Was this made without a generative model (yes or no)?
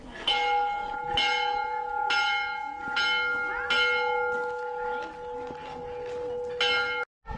yes